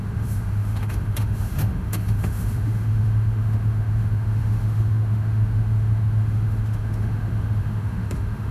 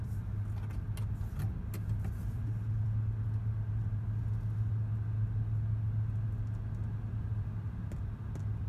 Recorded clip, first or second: second